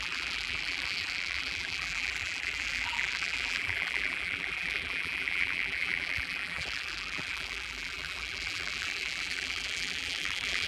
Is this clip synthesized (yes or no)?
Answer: yes